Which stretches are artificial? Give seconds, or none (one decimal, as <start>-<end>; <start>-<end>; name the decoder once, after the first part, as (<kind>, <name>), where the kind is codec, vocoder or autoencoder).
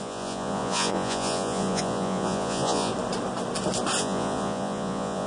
0.0-2.9 (vocoder, Vocos); 4.0-5.3